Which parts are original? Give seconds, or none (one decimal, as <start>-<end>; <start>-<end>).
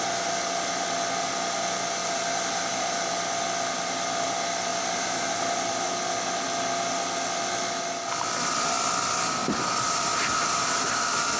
0.0-2.0; 3.1-4.7; 5.9-9.4